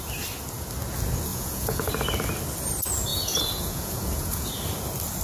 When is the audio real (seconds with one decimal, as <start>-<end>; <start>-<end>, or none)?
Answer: 0.0-1.3; 1.9-3.1; 4.5-5.2